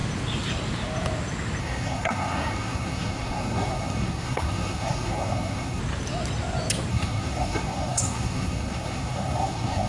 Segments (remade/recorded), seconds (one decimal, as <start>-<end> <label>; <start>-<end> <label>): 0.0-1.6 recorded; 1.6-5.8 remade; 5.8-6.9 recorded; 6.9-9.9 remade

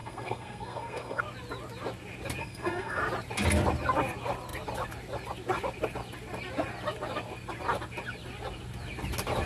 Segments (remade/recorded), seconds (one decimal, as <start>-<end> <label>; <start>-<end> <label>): 0.0-1.2 remade; 1.2-2.4 recorded; 2.4-3.0 remade; 3.0-9.5 recorded

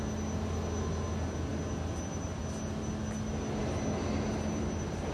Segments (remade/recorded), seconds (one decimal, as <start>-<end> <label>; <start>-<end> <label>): 0.0-5.1 recorded